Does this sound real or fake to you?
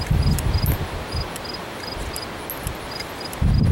real